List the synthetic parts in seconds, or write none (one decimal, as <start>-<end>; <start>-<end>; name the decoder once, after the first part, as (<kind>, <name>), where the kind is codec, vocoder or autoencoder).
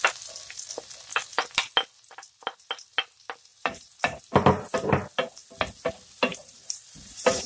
3.5-4.2 (vocoder, BigVGAN v2); 6.3-7.5